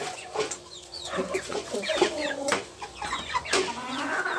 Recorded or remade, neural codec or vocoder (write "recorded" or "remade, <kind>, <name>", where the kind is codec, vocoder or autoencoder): remade, vocoder, Vocos